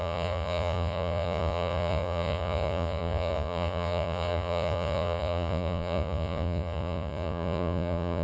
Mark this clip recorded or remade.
remade